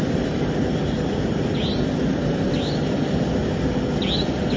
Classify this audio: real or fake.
real